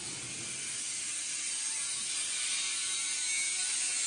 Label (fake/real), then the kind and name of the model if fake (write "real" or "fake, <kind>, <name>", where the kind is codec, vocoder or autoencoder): real